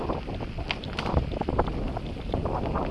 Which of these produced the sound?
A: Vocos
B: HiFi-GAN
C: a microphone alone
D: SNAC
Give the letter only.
C